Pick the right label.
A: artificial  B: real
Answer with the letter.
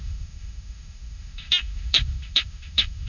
A